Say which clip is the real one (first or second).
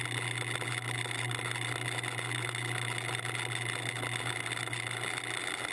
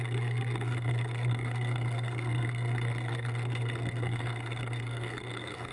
first